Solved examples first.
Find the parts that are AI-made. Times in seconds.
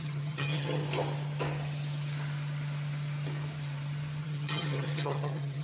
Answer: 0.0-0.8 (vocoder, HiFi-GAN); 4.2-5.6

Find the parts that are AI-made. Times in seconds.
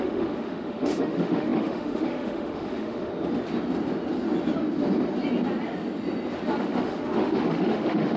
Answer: 0.0-3.1 (autoencoder, DAC-VAE); 6.6-8.2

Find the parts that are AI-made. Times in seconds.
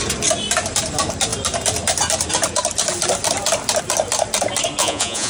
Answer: 4.8-5.3 (vocoder, Vocos)